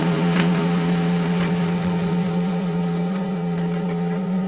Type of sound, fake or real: fake